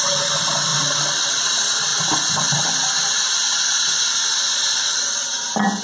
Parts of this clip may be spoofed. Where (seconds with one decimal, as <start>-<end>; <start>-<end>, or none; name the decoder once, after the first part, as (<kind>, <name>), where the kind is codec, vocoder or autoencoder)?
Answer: none